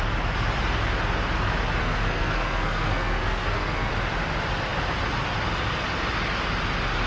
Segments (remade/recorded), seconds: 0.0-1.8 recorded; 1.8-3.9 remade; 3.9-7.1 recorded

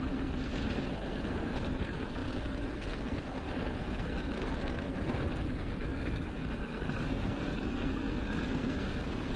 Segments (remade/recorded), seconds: 0.0-9.4 remade

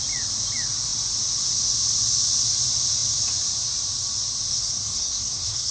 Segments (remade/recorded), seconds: 0.0-4.5 recorded; 4.5-5.7 remade

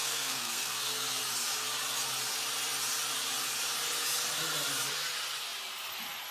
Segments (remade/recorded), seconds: 0.0-1.2 remade; 1.2-6.3 recorded

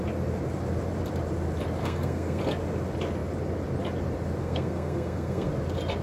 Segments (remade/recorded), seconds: 0.0-1.8 recorded; 1.8-2.4 remade; 2.4-4.4 recorded; 4.4-5.5 remade; 5.5-6.0 recorded

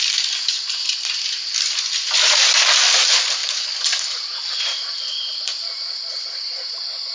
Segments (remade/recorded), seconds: 0.0-7.1 recorded